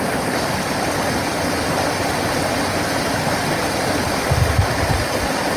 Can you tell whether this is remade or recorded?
recorded